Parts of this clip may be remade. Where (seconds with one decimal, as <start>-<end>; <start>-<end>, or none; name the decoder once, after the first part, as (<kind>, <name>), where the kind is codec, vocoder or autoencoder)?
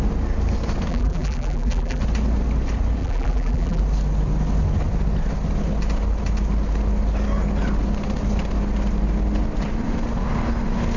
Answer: 0.9-2.0 (vocoder, BigVGAN v2); 3.0-3.8